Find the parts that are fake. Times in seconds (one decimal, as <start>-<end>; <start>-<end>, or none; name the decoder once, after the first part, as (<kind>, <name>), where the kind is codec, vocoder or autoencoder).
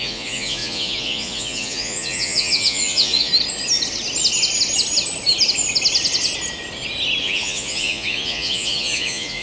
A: 0.0-3.3 (vocoder, Vocos); 7.2-9.4